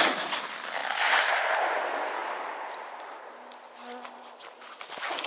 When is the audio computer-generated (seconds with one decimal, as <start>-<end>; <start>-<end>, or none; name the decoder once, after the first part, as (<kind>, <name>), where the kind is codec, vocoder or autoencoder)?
none